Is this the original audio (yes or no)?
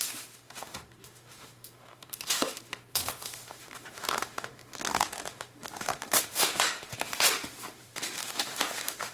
no